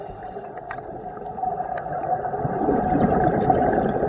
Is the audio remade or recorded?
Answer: recorded